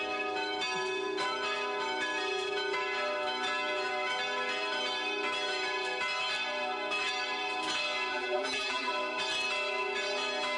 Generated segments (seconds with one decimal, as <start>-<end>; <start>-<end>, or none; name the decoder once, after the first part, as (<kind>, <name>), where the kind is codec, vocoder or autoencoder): 8.1-8.9 (vocoder, BigVGAN v2)